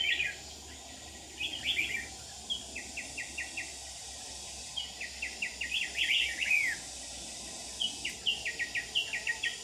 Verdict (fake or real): real